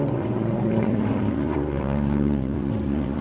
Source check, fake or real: fake